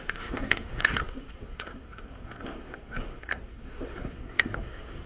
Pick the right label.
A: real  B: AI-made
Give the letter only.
B